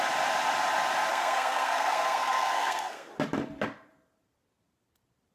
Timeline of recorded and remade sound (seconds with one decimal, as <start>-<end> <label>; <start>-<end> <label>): 0.0-1.1 recorded; 1.1-3.1 remade; 3.1-5.3 recorded